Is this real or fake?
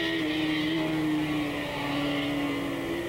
real